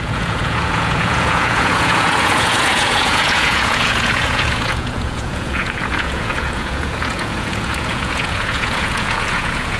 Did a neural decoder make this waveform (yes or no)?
yes